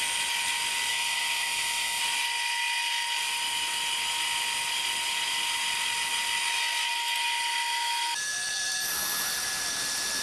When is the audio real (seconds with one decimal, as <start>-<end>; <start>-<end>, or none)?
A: 0.0-0.9; 2.0-10.2